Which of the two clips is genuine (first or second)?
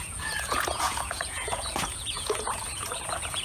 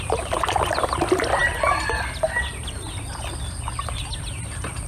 second